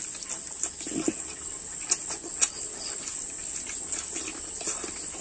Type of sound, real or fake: real